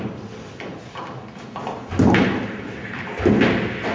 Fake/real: real